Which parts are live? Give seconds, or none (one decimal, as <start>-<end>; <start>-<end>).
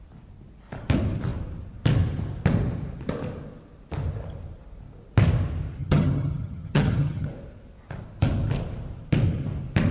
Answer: 0.0-5.8; 7.3-9.9